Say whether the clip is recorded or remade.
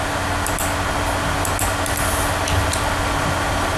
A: recorded